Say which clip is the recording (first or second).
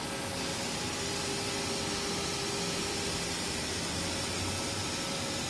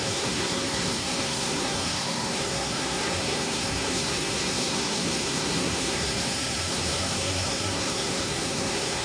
first